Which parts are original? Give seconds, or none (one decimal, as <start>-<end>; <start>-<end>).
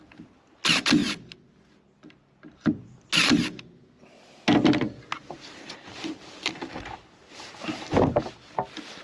0.0-5.2; 7.5-9.0